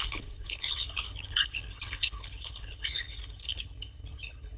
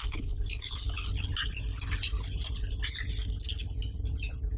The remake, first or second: first